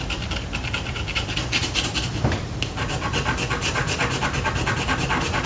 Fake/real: real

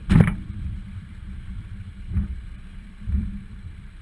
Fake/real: fake